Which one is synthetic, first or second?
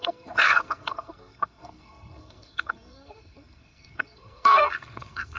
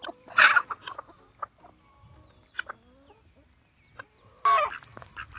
first